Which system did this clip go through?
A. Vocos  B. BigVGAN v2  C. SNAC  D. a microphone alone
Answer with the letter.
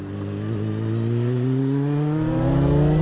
D